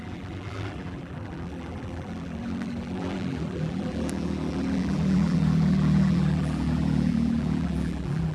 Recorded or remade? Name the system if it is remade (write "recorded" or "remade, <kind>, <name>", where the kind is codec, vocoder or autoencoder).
remade, vocoder, BigVGAN v2